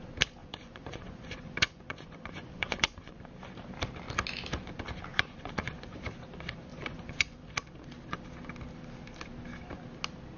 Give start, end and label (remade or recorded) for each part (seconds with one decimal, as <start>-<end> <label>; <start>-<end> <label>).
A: 0.0-0.4 recorded; 0.4-3.2 remade; 3.2-5.1 recorded; 5.1-6.0 remade; 6.0-6.7 recorded; 6.7-7.5 remade; 7.5-10.4 recorded